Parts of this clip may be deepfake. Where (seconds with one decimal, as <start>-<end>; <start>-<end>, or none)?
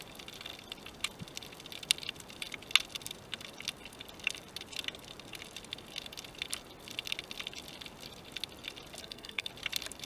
9.0-9.5